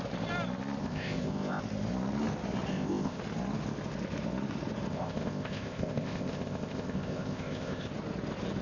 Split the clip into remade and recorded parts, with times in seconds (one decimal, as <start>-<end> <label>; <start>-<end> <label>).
0.0-0.8 recorded; 0.8-1.6 remade; 1.6-2.7 recorded; 2.7-3.2 remade; 3.2-4.9 recorded; 4.9-7.9 remade; 7.9-8.6 recorded